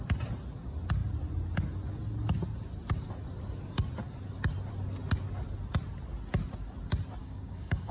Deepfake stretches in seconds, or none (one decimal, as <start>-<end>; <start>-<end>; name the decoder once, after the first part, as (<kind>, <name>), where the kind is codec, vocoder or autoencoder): 7.2-7.9 (codec, DAC)